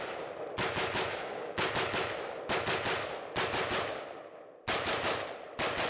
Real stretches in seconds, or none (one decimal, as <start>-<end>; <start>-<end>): 0.0-1.1; 1.7-5.9